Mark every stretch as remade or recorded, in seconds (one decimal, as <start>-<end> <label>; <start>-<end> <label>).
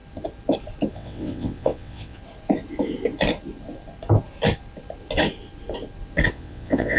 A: 0.0-0.9 recorded; 0.9-2.2 remade; 2.2-6.3 recorded; 6.3-7.0 remade